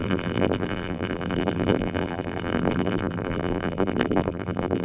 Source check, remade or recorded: remade